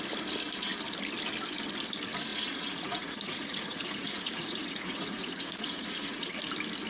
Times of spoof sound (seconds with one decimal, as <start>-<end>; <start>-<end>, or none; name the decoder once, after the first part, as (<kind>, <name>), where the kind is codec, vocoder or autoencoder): 2.3-6.4 (vocoder, Vocos)